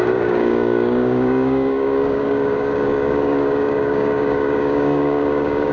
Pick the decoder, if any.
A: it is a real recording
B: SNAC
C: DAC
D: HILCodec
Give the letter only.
C